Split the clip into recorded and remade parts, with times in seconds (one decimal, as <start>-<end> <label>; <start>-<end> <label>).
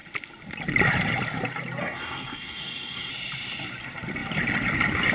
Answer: 0.0-1.8 recorded; 1.8-3.1 remade; 3.1-5.1 recorded